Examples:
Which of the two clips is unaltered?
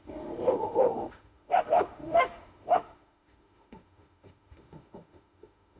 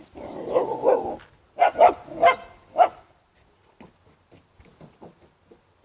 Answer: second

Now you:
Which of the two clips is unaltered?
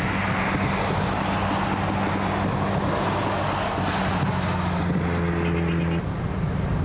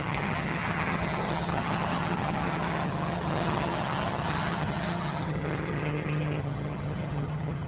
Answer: first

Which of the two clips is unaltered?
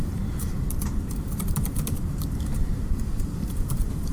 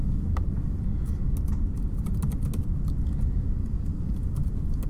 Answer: second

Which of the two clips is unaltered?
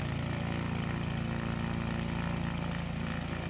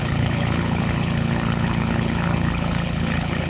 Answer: first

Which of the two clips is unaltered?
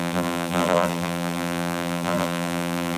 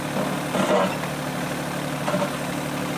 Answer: second